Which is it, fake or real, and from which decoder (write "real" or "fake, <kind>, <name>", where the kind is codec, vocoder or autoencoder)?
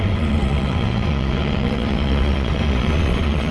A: fake, vocoder, WaveNeXt